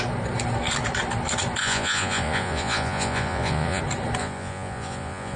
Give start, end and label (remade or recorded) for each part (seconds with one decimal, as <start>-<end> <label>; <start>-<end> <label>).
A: 0.0-1.6 recorded; 1.6-3.8 remade; 3.8-4.2 recorded; 4.2-5.4 remade

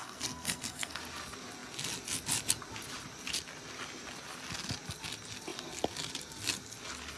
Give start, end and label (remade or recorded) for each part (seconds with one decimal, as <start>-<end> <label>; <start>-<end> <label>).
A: 0.0-1.0 remade; 1.0-7.2 recorded